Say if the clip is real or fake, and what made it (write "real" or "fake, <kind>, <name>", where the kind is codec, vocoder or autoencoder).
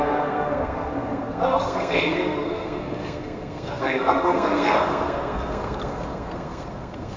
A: fake, codec, SNAC